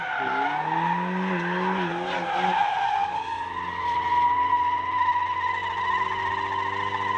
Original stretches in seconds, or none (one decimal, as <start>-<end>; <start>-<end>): 0.0-7.2